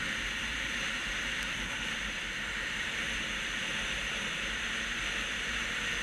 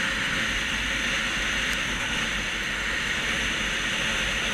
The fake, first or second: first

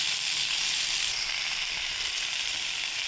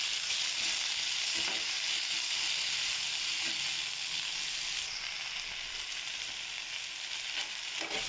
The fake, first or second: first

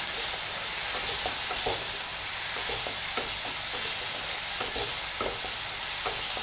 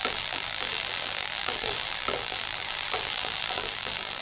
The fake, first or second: second